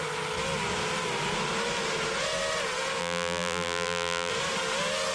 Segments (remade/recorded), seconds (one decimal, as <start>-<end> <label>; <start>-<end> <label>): 0.0-3.0 recorded; 3.0-4.3 remade; 4.3-5.1 recorded